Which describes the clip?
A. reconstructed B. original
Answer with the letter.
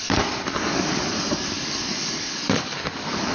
A